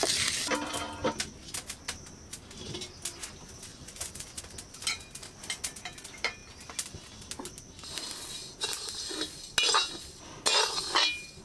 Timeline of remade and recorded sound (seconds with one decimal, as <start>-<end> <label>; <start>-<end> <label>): 0.0-3.7 recorded; 3.7-4.4 remade; 4.4-11.4 recorded